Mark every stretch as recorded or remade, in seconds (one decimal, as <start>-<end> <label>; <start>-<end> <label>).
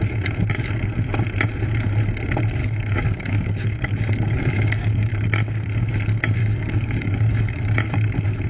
0.0-2.6 recorded; 2.6-5.7 remade; 5.7-6.4 recorded; 6.4-8.1 remade; 8.1-8.5 recorded